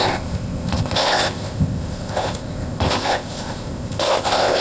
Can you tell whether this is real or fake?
fake